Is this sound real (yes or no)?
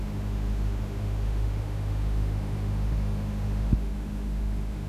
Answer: no